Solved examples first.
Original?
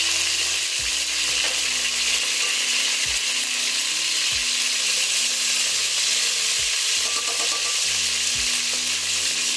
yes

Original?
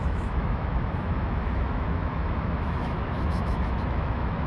no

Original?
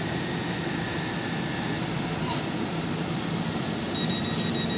yes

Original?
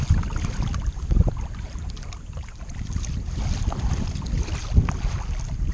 yes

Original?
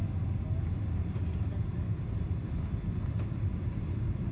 yes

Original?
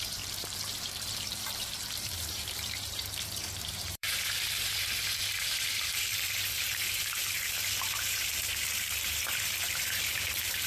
no